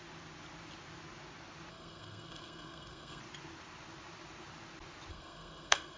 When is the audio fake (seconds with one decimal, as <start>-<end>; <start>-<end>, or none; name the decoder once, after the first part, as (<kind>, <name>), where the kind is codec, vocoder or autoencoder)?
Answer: 1.7-3.2 (codec, SNAC); 5.1-6.0